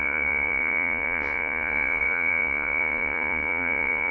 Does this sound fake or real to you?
fake